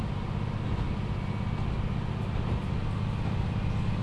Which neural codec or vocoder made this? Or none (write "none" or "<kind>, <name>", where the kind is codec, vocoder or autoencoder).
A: none